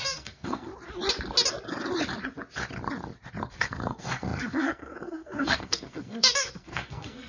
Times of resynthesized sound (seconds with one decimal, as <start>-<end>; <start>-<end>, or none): 0.0-0.7; 3.5-7.3